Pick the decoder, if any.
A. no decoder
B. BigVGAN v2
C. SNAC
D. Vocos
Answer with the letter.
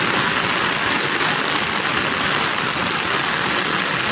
A